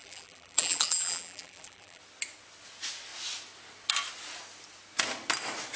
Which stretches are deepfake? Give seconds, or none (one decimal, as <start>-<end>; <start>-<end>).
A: 0.0-2.0